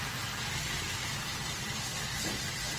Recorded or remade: recorded